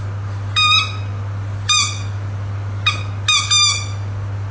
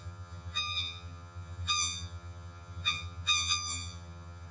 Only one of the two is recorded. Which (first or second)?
first